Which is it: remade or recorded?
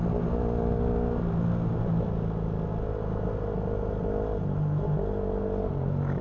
recorded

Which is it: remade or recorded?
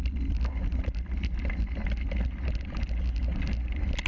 recorded